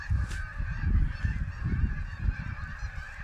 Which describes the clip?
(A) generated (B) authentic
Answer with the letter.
A